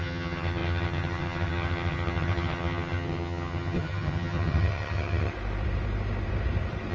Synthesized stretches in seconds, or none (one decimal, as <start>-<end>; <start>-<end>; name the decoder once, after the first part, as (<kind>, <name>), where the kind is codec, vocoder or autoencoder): 0.0-5.3 (vocoder, HiFi-GAN)